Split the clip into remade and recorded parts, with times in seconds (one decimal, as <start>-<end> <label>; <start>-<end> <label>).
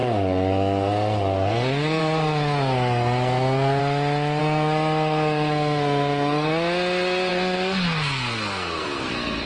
0.0-3.8 remade; 3.8-4.4 recorded; 4.4-6.5 remade; 6.5-7.3 recorded; 7.3-9.5 remade